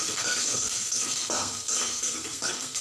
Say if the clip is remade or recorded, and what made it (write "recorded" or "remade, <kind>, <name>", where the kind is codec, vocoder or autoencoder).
remade, codec, SNAC